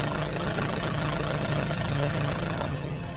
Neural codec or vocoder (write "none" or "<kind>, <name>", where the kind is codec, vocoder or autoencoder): vocoder, HiFi-GAN